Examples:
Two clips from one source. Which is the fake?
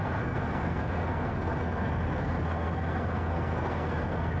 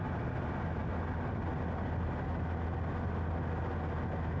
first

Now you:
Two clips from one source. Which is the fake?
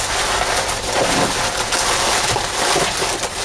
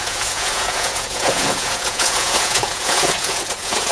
second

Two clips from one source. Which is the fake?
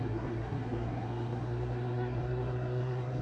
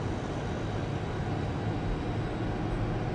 first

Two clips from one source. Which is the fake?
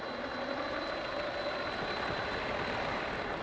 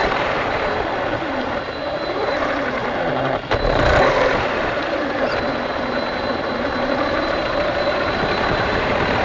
second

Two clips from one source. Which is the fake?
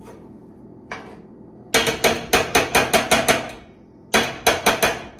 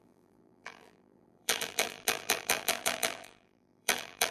second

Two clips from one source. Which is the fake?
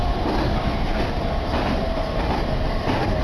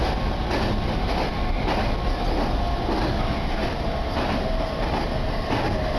first